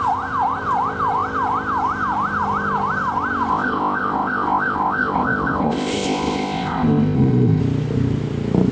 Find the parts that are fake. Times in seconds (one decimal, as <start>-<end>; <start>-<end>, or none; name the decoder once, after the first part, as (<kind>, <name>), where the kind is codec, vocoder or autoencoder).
3.5-7.6 (codec, ZipCodec)